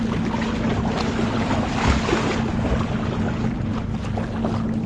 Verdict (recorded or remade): recorded